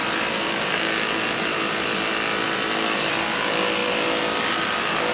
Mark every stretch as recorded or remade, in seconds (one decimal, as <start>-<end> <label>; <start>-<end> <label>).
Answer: 0.0-5.1 recorded